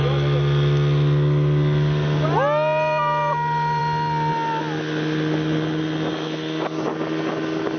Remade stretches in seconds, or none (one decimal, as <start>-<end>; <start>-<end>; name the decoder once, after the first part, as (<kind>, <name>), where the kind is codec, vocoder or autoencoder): none